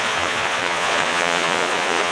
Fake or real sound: fake